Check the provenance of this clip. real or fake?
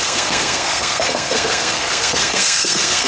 fake